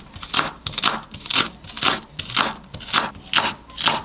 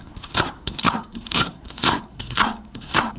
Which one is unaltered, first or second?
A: first